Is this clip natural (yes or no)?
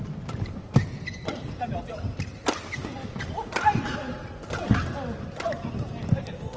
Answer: yes